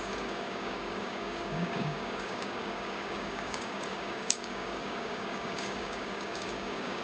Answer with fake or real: fake